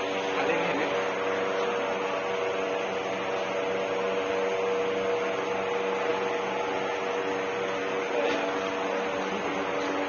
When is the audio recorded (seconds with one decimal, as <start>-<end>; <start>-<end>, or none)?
0.0-10.1